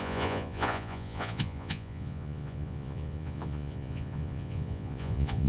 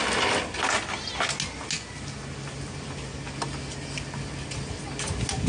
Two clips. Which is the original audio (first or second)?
second